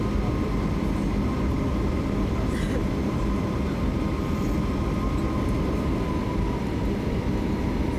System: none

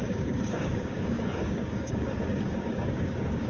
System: codec, DAC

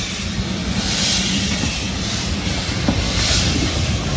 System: none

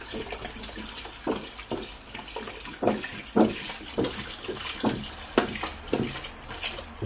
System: none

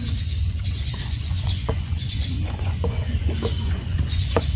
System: vocoder, Vocos